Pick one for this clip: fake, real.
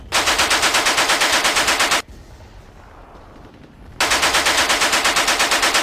real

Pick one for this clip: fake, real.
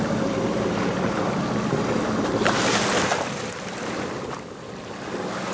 real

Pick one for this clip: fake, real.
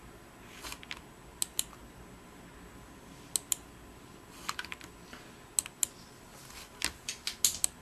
real